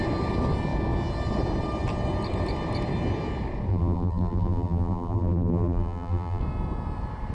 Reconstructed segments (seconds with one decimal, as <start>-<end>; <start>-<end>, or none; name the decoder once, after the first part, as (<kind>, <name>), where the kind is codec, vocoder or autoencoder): 3.7-6.4 (vocoder, BigVGAN v2)